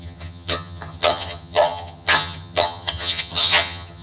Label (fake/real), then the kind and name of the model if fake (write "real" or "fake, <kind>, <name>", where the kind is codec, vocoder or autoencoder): fake, vocoder, HiFi-GAN